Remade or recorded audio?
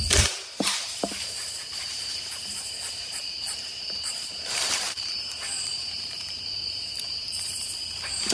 remade